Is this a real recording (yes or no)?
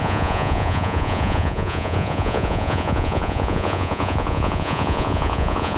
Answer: no